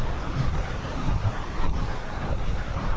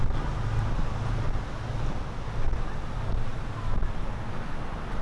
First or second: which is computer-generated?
first